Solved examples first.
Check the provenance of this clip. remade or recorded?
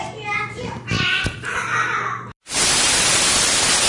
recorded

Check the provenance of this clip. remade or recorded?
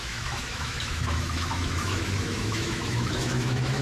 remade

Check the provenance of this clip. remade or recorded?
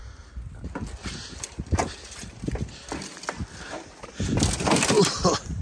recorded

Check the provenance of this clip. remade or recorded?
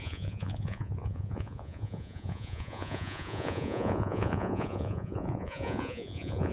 remade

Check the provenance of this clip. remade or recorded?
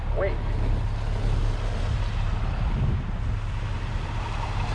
recorded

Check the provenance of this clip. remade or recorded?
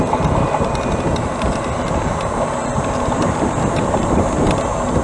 recorded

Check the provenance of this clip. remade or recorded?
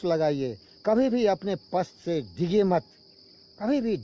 recorded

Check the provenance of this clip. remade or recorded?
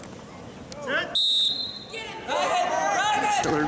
recorded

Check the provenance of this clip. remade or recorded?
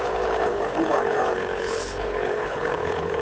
remade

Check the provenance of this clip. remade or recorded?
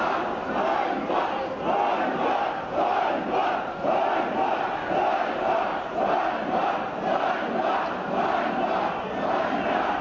recorded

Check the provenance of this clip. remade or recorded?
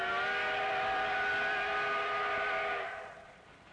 recorded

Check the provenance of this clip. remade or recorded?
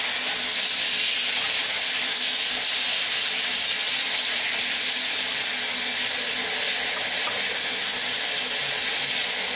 recorded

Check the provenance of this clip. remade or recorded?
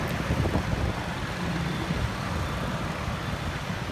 recorded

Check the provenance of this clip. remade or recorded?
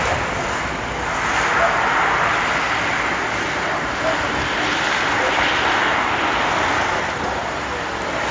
recorded